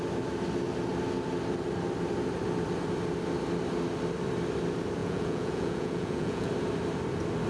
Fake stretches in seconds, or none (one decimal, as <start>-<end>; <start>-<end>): 5.0-6.5